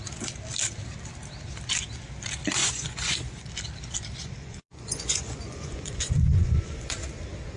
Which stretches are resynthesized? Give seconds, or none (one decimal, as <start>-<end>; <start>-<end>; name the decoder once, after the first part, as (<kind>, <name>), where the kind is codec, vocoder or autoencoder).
2.6-3.5 (vocoder, Vocos); 4.2-6.9